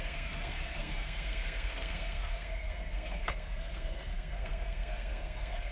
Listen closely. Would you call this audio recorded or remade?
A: remade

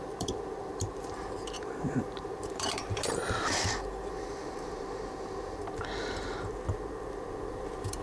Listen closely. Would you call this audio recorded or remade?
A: remade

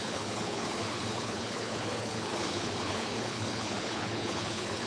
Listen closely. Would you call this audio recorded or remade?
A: remade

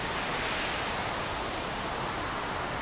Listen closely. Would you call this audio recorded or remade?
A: recorded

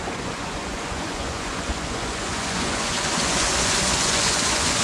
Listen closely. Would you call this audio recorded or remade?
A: remade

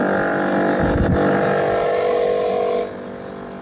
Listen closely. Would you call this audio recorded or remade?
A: recorded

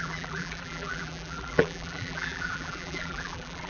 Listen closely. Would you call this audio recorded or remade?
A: remade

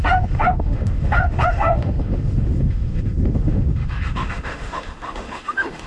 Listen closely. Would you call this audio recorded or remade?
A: remade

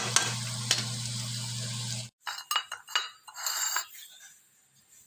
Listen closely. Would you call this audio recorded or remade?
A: recorded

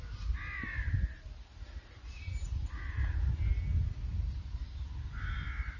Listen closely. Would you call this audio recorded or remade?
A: recorded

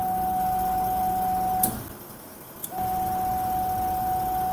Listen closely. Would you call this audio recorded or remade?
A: recorded